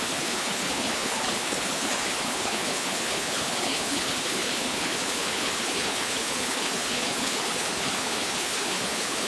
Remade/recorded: remade